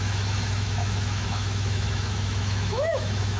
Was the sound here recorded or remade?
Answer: remade